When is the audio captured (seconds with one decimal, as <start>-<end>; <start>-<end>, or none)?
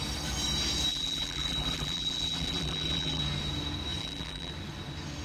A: 0.0-0.9; 3.2-4.0; 4.5-5.2